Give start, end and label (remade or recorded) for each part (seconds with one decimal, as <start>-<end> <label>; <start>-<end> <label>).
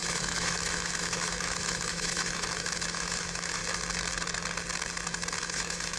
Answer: 0.0-3.6 remade; 3.6-5.4 recorded; 5.4-6.0 remade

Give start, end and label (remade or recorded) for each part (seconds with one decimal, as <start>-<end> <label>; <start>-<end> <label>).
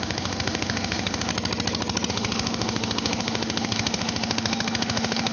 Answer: 0.0-1.3 remade; 1.3-2.1 recorded; 2.1-5.3 remade